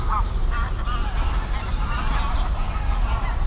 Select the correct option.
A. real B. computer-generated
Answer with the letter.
A